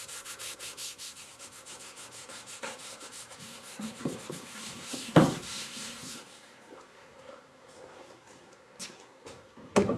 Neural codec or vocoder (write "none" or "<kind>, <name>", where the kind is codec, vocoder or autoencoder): codec, SNAC